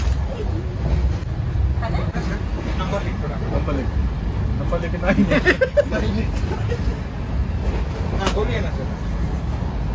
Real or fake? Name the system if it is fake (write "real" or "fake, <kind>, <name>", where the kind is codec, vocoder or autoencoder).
real